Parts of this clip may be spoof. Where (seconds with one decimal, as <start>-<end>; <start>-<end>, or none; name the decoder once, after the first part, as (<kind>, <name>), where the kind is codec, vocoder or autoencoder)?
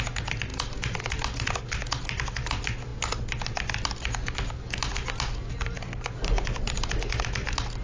none